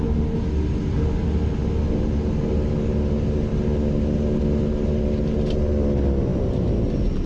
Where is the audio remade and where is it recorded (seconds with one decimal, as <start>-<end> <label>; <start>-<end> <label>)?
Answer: 0.0-6.3 recorded; 6.3-7.3 remade